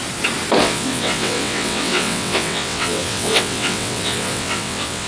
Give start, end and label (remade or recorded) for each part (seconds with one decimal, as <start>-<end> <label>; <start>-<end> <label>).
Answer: 0.0-0.6 recorded; 0.6-5.1 remade